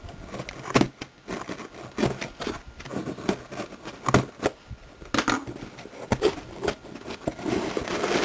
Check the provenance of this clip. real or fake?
real